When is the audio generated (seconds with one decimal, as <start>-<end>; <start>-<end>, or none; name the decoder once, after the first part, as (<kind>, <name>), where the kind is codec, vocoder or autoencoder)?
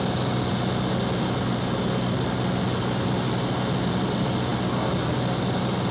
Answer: none